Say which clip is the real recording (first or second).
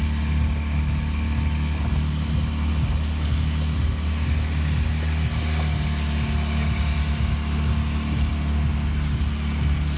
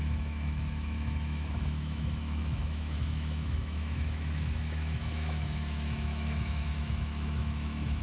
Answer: first